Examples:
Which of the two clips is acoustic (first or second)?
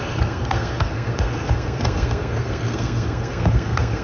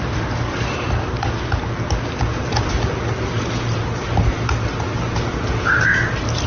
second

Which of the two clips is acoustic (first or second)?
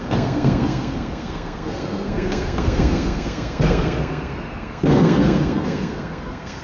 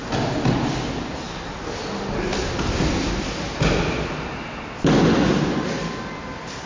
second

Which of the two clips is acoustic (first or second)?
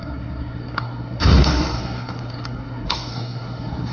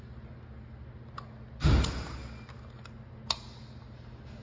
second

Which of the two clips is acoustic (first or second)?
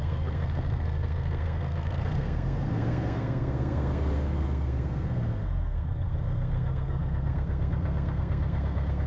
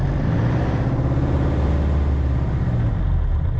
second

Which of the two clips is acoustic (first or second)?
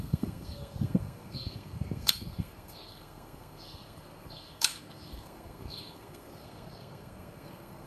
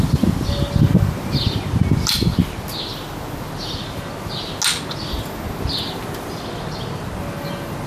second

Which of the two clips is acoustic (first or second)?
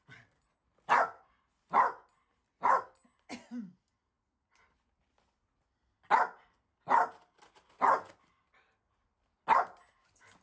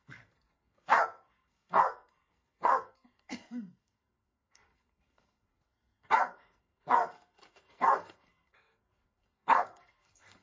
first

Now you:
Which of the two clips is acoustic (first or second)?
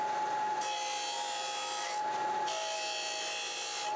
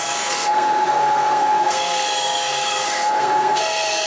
first